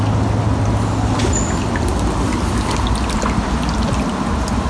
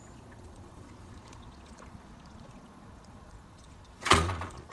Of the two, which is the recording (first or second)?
first